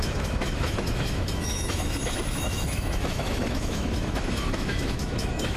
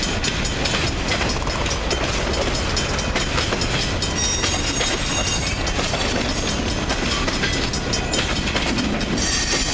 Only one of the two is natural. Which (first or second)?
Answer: second